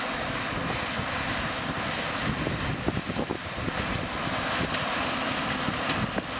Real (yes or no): yes